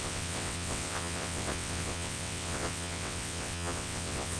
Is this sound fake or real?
fake